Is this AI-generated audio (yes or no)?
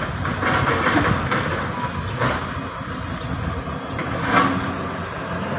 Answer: no